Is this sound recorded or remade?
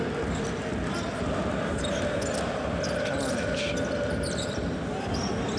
recorded